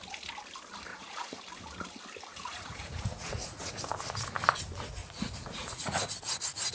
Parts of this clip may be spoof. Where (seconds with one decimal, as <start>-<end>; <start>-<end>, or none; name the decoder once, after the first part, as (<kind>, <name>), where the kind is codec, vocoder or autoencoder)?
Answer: 0.9-1.4 (vocoder, Vocos); 2.3-3.7; 5.0-6.1